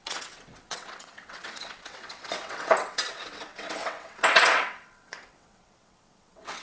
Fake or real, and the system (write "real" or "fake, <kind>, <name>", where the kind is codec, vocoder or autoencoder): fake, vocoder, WaveNeXt